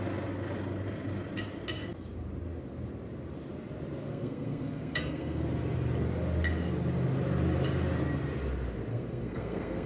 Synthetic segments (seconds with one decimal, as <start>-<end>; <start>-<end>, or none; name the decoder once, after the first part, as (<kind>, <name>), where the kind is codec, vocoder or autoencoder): 4.1-5.4 (codec, SNAC); 8.9-9.9